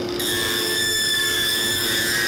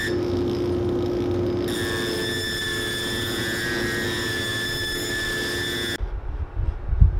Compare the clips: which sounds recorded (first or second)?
second